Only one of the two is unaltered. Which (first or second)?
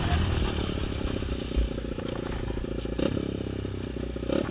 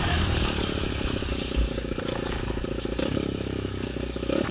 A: first